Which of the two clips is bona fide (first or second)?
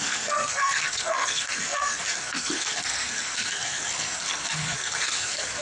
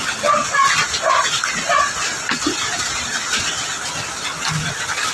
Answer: second